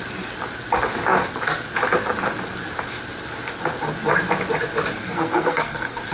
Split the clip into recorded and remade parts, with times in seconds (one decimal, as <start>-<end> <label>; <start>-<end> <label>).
0.0-5.0 recorded; 5.0-6.1 remade